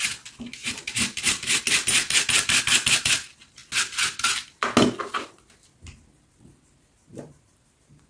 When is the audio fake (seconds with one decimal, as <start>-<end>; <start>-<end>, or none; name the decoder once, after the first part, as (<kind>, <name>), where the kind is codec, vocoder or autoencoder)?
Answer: 0.6-1.6 (vocoder, BigVGAN v2); 7.1-8.1